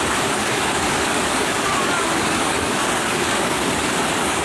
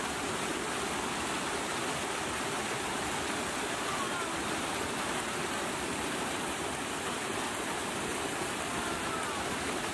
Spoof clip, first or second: first